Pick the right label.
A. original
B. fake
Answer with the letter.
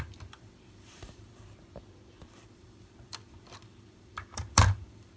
B